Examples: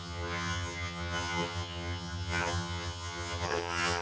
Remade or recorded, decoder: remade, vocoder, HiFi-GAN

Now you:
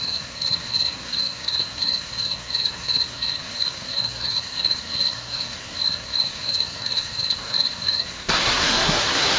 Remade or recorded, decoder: remade, codec, SNAC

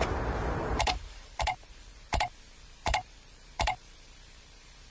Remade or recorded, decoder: remade, vocoder, BigVGAN v2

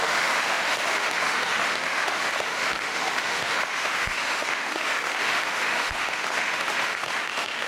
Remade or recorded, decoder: remade, autoencoder, DAC-VAE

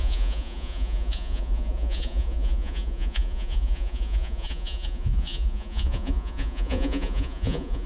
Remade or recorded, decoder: remade, vocoder, Vocos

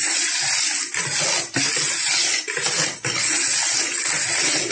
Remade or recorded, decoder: recorded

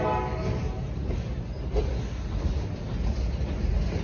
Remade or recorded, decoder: recorded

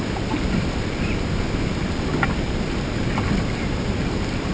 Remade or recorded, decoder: recorded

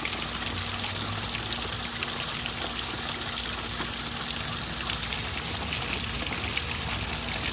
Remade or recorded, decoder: recorded